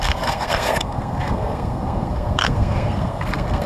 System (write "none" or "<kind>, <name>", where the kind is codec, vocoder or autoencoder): codec, SNAC